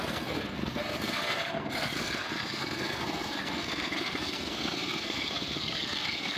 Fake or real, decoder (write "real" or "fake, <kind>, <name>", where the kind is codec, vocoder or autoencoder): fake, codec, SNAC